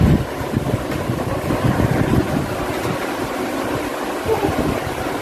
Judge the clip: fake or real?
real